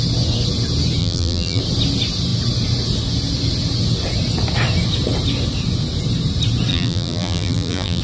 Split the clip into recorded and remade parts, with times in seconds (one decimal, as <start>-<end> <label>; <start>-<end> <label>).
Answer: 0.0-1.0 recorded; 1.0-1.6 remade; 1.6-6.7 recorded; 6.7-8.0 remade

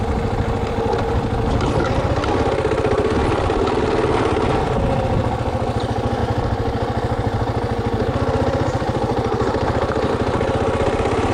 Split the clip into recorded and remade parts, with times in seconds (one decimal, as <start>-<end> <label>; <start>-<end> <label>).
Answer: 0.0-6.2 recorded; 6.2-10.1 remade; 10.1-11.3 recorded

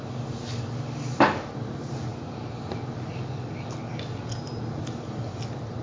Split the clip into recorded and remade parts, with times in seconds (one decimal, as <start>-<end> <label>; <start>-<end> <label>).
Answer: 0.0-5.8 recorded